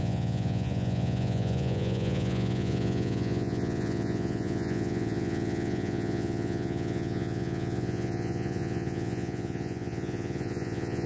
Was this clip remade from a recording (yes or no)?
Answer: yes